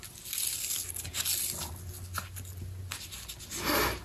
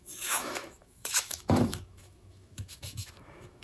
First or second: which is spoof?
second